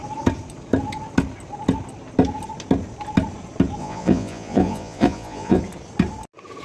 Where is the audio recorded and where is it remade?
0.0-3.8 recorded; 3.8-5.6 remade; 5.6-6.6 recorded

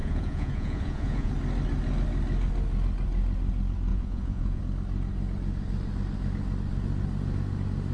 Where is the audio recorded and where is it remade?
0.0-1.3 remade; 1.3-3.9 recorded; 3.9-4.6 remade; 4.6-7.9 recorded

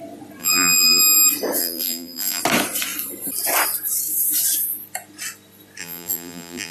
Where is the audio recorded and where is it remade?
0.0-0.4 recorded; 0.4-1.0 remade; 1.0-1.6 recorded; 1.6-2.4 remade; 2.4-5.8 recorded; 5.8-6.7 remade

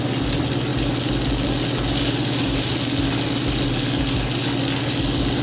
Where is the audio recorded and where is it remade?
0.0-5.4 recorded

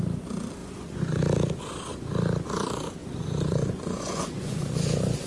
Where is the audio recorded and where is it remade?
0.0-0.6 recorded; 0.6-1.2 remade; 1.2-3.0 recorded; 3.0-5.3 remade

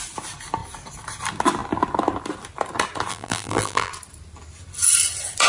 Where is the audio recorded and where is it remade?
0.0-3.1 recorded; 3.1-3.9 remade; 3.9-5.5 recorded

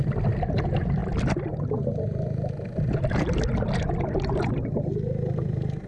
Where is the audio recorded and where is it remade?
0.0-5.9 recorded